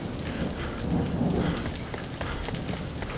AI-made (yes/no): no